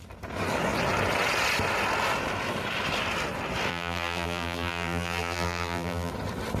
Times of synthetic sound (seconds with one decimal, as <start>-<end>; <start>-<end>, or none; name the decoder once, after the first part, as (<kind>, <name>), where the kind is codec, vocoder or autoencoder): 3.7-6.1 (vocoder, BigVGAN v2)